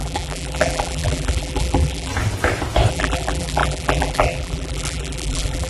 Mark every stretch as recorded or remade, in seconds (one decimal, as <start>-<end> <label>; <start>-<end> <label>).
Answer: 0.0-2.1 remade; 2.1-2.9 recorded; 2.9-5.7 remade

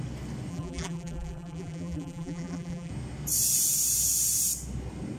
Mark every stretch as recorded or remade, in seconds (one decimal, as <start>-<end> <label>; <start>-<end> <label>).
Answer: 0.0-0.5 recorded; 0.5-2.9 remade; 2.9-5.2 recorded

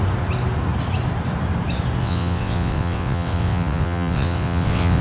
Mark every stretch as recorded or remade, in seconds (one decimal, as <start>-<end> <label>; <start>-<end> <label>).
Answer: 0.0-2.0 recorded; 2.0-5.0 remade

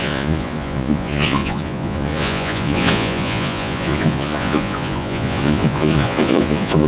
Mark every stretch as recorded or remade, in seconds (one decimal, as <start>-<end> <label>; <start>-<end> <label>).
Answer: 0.0-6.9 remade

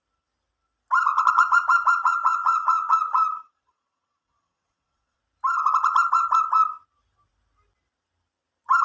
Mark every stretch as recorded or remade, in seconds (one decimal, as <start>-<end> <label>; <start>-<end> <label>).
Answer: 0.0-1.1 recorded; 1.1-5.2 remade; 5.2-8.8 recorded

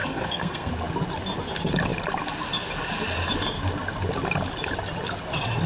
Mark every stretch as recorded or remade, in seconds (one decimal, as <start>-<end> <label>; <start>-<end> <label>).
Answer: 0.0-0.7 remade; 0.7-5.7 recorded

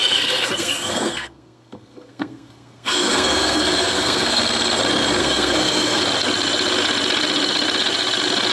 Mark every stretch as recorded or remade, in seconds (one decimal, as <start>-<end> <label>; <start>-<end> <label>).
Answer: 0.0-4.4 remade; 4.4-5.2 recorded; 5.2-6.0 remade; 6.0-8.5 recorded

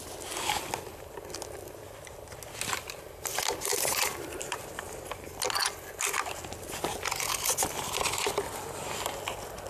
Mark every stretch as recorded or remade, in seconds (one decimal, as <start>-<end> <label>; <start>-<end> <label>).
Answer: 0.0-3.7 recorded; 3.7-4.7 remade; 4.7-9.7 recorded